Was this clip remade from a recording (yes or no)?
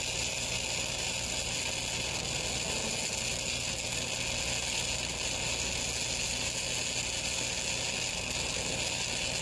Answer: no